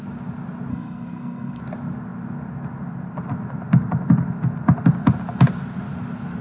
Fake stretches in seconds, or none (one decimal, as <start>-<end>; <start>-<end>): 0.7-1.6